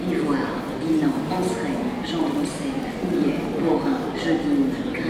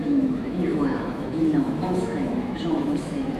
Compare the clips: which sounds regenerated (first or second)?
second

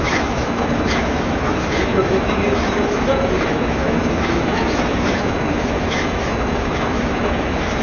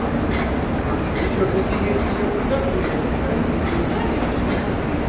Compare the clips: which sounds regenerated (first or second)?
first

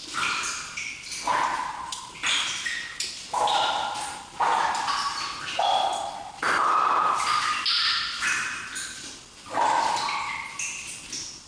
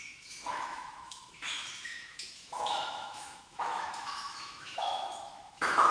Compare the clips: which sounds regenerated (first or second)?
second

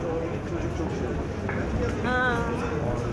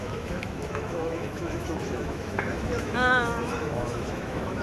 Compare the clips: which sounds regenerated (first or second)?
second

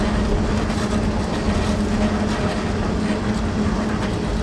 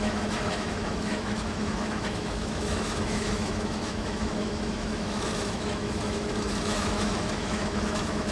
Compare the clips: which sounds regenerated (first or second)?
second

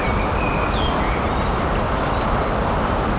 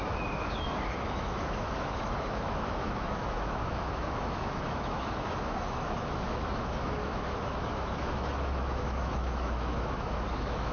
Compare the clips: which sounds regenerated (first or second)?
second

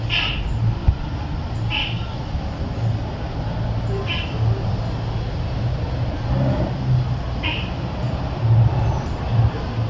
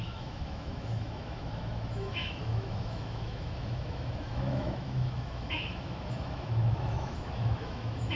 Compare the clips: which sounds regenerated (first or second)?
second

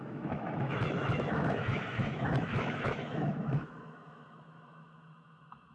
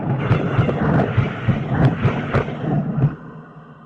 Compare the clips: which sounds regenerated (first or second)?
first